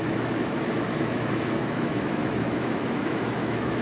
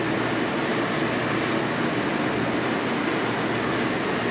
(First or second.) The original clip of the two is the second